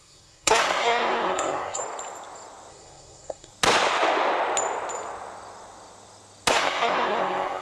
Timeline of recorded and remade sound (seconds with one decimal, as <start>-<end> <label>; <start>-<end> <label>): 0.0-1.8 remade; 1.8-2.7 recorded; 2.7-3.5 remade; 3.5-6.5 recorded; 6.5-7.6 remade